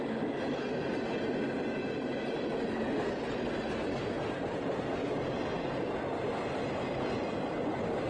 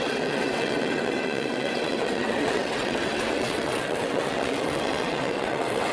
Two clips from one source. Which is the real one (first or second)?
first